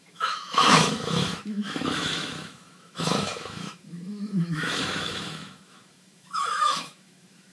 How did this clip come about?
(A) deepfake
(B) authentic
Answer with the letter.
A